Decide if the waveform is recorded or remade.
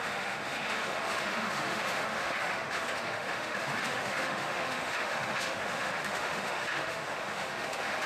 remade